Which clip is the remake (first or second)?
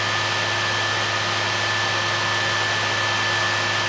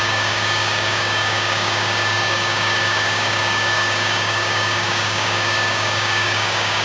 second